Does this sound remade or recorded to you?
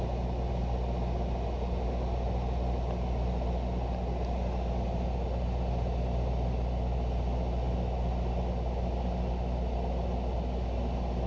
recorded